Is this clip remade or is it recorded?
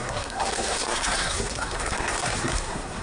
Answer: remade